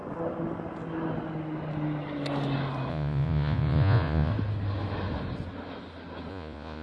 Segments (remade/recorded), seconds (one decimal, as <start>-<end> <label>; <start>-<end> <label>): 0.0-2.9 recorded; 2.9-4.3 remade; 4.3-6.3 recorded; 6.3-6.8 remade